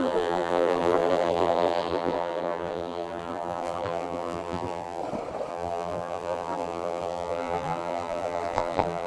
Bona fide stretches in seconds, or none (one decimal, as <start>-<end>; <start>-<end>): 5.0-5.5